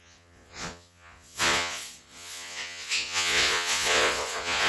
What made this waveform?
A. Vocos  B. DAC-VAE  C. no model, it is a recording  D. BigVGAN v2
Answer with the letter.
A